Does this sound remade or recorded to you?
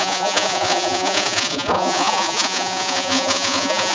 remade